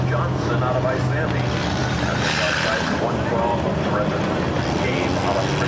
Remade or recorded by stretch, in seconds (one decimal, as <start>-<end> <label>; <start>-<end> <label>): 0.0-1.8 recorded; 1.8-4.6 remade; 4.6-5.7 recorded

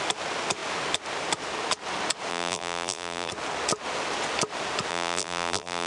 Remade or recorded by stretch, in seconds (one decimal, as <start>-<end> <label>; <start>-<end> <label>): 0.0-2.3 recorded; 2.3-3.3 remade; 3.3-4.9 recorded; 4.9-5.9 remade

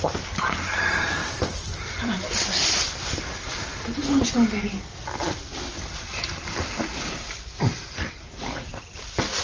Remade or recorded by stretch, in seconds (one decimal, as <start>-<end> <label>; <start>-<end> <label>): 0.0-1.2 recorded; 1.2-2.7 remade; 2.7-4.9 recorded; 4.9-7.1 remade; 7.1-9.4 recorded

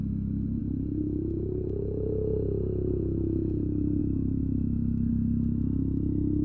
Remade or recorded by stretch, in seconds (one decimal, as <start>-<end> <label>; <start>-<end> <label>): 0.0-0.6 recorded; 0.6-4.0 remade; 4.0-6.4 recorded

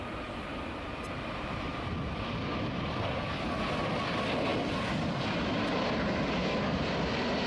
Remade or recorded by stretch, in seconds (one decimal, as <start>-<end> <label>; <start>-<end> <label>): 0.0-4.5 remade; 4.5-6.6 recorded; 6.6-7.5 remade